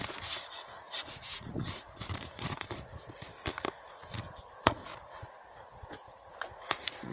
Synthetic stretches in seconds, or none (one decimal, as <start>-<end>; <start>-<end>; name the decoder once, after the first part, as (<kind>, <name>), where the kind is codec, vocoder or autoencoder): 0.0-3.3 (vocoder, Vocos); 4.4-7.1